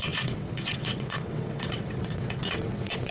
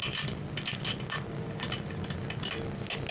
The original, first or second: second